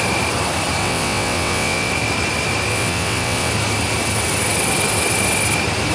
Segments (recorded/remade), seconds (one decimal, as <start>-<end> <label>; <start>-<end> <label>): 0.0-0.8 recorded; 0.8-1.9 remade; 1.9-2.7 recorded; 2.7-3.5 remade; 3.5-5.9 recorded